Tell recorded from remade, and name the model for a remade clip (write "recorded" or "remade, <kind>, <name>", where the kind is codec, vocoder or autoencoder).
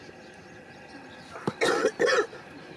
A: recorded